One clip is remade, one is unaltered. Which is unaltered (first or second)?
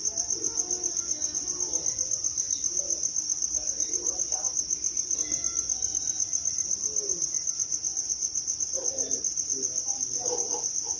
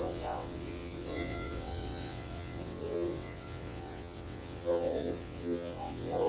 first